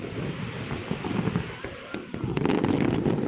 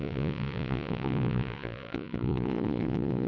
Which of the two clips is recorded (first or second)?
first